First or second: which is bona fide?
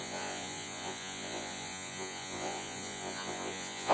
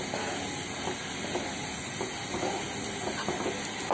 second